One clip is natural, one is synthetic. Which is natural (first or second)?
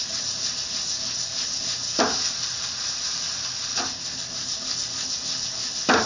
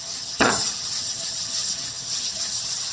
first